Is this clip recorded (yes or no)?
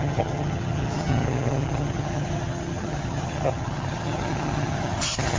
no